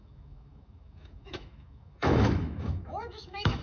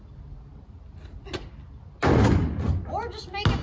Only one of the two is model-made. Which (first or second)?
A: first